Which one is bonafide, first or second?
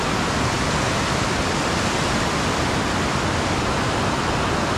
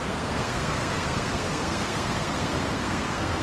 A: first